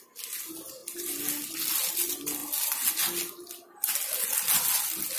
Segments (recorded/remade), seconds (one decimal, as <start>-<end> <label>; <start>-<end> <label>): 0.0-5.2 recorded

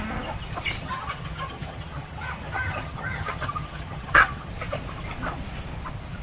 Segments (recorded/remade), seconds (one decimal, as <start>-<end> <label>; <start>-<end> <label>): 0.0-0.8 recorded; 0.8-4.5 remade; 4.5-6.2 recorded

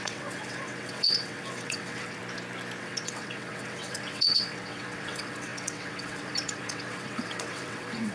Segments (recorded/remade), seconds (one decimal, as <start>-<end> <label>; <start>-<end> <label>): 0.0-2.2 remade; 2.2-2.8 recorded; 2.8-8.1 remade

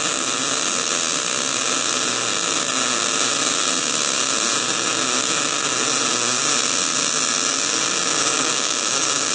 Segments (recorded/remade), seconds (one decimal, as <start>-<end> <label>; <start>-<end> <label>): 0.0-8.2 recorded; 8.2-9.3 remade

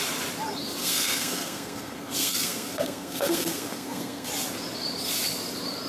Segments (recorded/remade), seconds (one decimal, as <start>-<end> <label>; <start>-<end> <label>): 0.0-0.8 recorded; 0.8-4.3 remade; 4.3-5.9 recorded

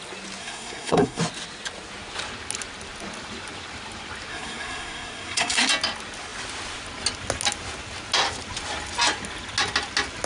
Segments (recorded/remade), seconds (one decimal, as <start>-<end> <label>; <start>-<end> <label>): 0.0-0.4 recorded; 0.4-1.2 remade; 1.2-4.3 recorded; 4.3-5.7 remade; 5.7-10.3 recorded

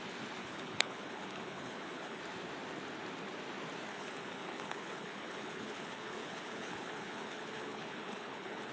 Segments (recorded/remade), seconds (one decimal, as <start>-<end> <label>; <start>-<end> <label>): 0.0-0.4 recorded; 0.4-2.2 remade; 2.2-3.9 recorded; 3.9-8.7 remade

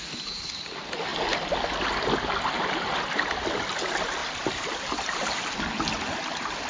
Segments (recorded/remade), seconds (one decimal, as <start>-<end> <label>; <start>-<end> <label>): 0.0-6.7 recorded